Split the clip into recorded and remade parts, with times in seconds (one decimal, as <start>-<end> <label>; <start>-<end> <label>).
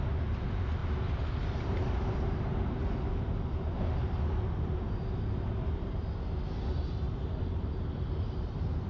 0.0-8.9 recorded